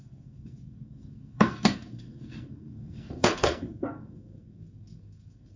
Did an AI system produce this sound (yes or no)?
yes